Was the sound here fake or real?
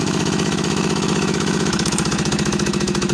fake